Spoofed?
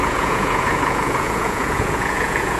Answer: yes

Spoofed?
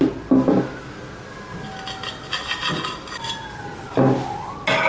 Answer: no